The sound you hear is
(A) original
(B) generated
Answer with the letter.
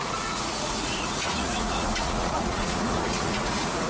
B